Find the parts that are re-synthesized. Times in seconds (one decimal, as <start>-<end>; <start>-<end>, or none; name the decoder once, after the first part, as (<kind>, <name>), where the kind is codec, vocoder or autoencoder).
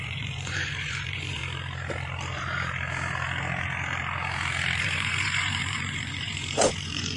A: 0.0-1.4 (vocoder, Vocos); 4.8-7.2